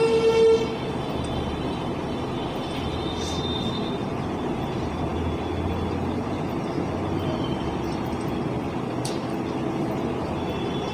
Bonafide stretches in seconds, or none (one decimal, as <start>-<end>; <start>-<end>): 0.0-10.9

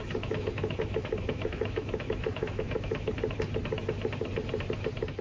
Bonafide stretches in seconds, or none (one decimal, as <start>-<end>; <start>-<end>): 3.1-5.2

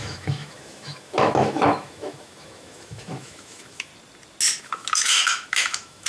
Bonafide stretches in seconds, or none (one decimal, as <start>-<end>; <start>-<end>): 3.9-4.6

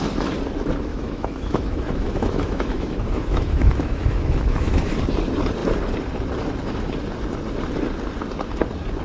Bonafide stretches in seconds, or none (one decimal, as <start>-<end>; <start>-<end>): 0.0-0.9; 5.0-9.0

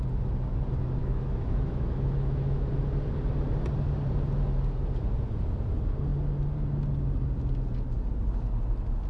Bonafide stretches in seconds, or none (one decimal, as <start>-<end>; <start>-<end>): 0.0-1.0; 2.7-9.1

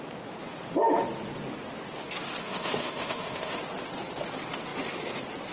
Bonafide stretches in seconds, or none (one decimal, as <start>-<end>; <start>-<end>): 0.0-2.4; 3.6-5.5